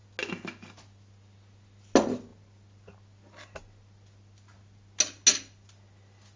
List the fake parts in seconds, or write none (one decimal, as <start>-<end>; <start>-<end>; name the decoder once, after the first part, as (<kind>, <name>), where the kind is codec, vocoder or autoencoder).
none